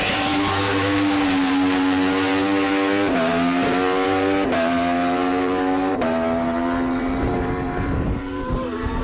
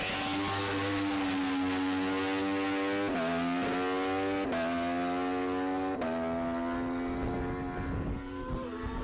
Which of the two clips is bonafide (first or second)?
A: second